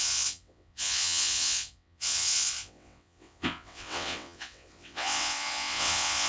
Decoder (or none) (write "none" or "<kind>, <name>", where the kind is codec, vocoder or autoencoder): vocoder, WaveNeXt